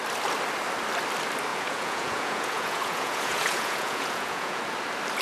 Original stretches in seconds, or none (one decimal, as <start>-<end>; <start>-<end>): 0.0-1.5; 4.6-5.2